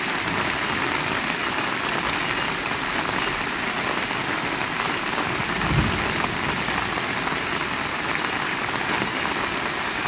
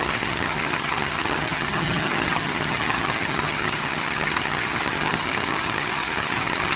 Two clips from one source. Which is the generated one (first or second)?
second